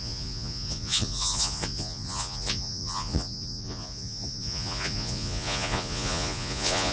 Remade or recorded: remade